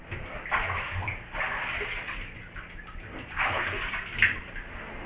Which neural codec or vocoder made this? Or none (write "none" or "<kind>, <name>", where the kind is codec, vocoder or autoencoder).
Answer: none